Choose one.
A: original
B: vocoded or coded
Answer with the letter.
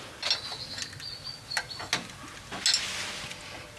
A